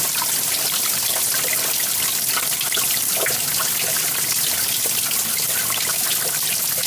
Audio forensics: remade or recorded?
recorded